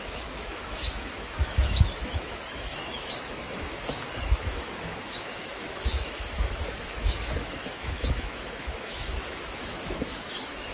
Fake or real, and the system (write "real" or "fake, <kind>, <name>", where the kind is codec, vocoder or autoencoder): fake, autoencoder, DAC-VAE